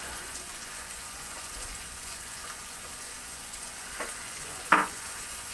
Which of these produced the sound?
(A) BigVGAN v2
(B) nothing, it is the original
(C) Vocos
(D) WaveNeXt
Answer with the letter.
C